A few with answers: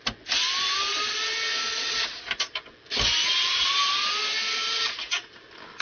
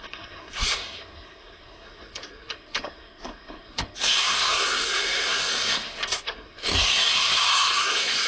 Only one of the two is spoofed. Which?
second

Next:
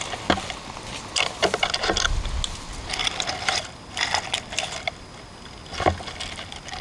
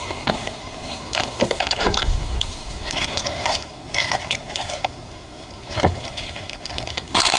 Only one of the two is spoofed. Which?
second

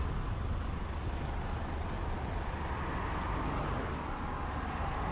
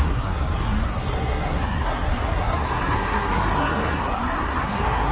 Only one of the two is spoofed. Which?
second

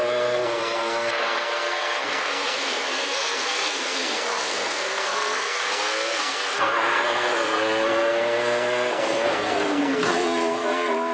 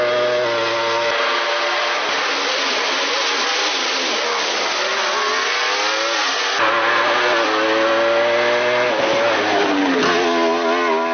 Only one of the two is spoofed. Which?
first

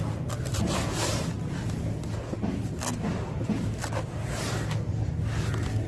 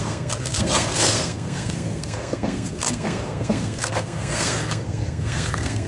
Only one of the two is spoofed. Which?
second